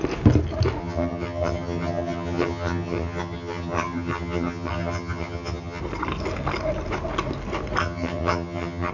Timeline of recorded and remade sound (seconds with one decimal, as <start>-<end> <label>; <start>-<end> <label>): 0.0-0.8 recorded; 0.8-5.8 remade; 5.8-7.8 recorded; 7.8-8.9 remade